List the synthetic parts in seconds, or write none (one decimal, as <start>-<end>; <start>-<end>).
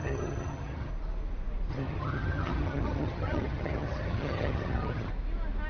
0.0-0.9; 1.7-5.1